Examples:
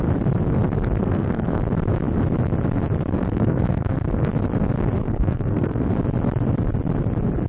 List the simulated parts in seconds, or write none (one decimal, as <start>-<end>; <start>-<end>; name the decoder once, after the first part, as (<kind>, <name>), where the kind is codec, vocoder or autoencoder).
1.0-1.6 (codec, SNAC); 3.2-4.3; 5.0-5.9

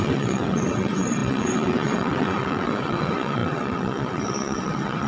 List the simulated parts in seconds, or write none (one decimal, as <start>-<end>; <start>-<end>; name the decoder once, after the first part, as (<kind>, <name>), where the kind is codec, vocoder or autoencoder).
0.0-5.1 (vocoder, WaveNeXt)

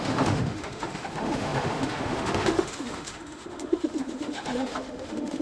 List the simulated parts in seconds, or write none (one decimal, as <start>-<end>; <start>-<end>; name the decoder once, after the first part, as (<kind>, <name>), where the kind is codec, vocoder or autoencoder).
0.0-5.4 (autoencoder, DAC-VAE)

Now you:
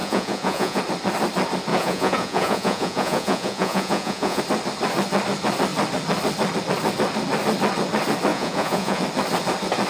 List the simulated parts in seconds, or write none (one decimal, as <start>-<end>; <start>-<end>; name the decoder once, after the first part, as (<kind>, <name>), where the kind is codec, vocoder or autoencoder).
0.0-0.8 (vocoder, Vocos); 1.7-4.4; 8.3-9.0

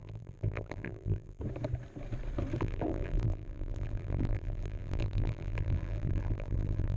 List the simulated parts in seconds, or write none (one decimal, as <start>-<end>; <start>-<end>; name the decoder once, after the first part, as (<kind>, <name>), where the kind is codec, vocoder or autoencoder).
0.0-1.4 (vocoder, BigVGAN v2); 2.6-7.0

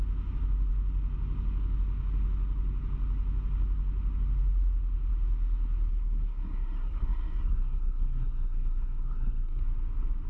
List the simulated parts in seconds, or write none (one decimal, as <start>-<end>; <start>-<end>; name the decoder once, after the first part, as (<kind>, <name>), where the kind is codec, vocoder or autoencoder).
5.9-9.6 (codec, SNAC)

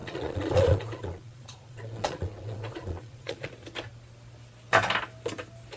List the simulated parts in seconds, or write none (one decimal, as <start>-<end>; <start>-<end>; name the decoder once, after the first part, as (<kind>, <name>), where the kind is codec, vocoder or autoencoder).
0.0-3.5 (vocoder, Vocos)

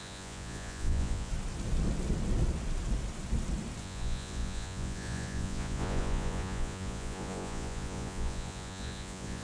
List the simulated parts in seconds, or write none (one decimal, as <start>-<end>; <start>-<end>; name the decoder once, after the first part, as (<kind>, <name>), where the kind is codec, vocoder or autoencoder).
0.0-1.3 (vocoder, Vocos); 3.8-9.4